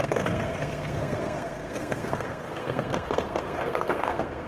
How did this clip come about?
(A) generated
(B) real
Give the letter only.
A